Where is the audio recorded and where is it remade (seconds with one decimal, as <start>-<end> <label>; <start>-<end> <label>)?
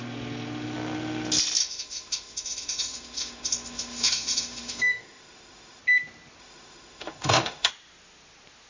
0.0-1.6 recorded; 1.6-5.8 remade; 5.8-6.4 recorded; 6.4-7.7 remade; 7.7-8.7 recorded